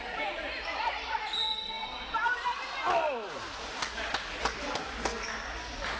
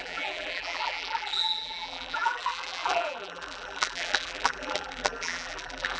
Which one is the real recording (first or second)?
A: first